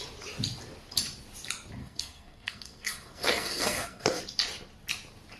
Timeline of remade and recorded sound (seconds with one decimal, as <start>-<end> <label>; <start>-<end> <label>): 0.0-1.8 recorded; 1.8-4.2 remade; 4.2-5.4 recorded